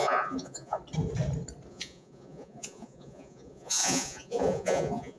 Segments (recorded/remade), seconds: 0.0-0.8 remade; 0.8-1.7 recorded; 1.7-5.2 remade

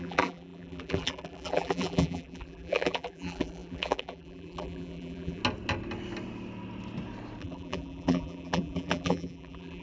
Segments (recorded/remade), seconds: 0.0-5.4 remade; 5.4-7.4 recorded; 7.4-9.8 remade

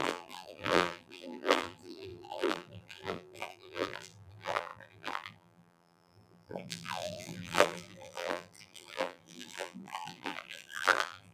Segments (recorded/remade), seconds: 0.0-11.3 remade

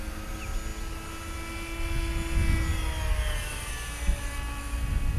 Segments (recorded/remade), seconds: 0.0-5.2 recorded